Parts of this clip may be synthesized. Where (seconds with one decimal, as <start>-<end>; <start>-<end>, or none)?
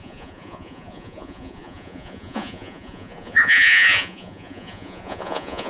0.0-5.7